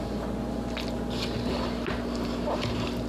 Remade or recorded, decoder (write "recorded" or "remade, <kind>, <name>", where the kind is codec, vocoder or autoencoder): recorded